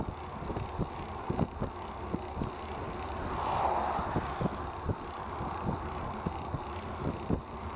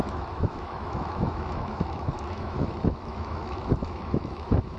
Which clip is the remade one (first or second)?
second